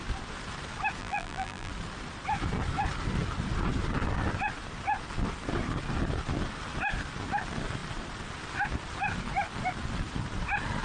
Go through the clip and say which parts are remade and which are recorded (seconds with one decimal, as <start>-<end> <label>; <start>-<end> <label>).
0.0-1.0 recorded; 1.0-1.7 remade; 1.7-10.8 recorded